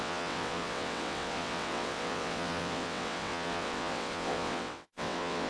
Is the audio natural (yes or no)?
no